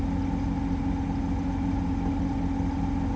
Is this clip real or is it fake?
real